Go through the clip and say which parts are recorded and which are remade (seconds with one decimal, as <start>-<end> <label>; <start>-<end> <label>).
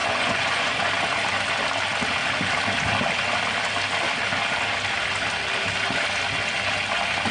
0.0-0.9 remade; 0.9-7.3 recorded